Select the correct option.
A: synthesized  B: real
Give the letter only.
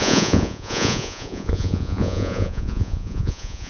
A